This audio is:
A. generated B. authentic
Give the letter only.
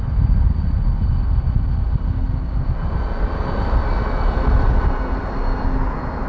B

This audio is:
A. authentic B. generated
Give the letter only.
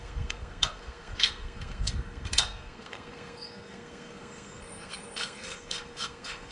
B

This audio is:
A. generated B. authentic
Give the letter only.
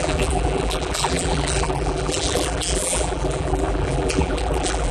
A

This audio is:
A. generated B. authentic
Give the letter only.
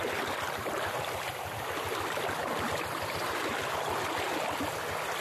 B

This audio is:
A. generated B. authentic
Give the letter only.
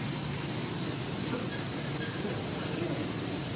B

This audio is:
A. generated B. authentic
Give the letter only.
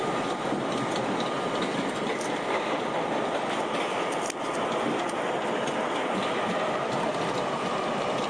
B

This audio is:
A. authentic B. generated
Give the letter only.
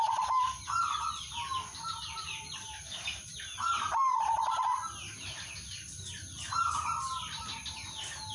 A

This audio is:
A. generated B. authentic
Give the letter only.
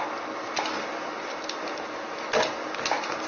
B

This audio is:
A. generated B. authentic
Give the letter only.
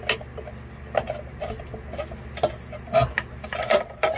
B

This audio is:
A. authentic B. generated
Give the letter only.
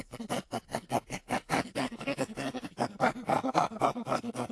B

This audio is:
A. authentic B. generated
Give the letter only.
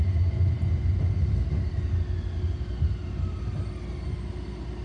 A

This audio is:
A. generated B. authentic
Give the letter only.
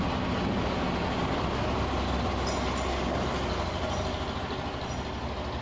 B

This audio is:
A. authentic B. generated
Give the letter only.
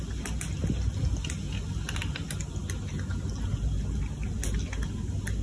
A